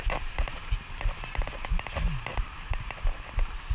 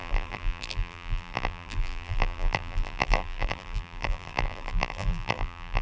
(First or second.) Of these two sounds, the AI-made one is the second